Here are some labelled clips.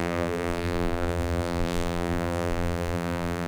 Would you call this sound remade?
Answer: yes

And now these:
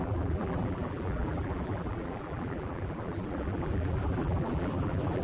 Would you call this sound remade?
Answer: yes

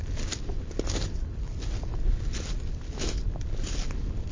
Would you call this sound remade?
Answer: no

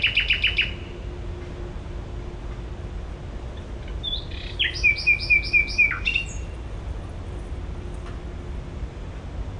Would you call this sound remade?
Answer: no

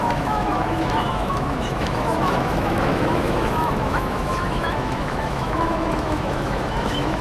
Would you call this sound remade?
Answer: yes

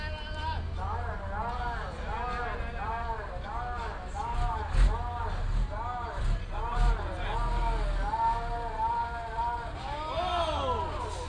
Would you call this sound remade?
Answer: no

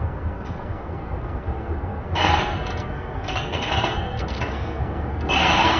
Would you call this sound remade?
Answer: yes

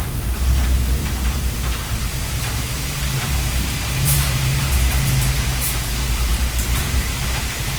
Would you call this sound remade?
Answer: yes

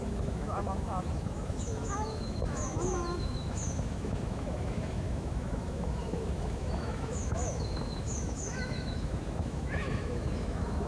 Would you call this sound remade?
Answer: yes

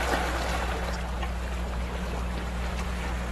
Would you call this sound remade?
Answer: no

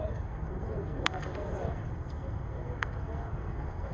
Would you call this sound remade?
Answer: yes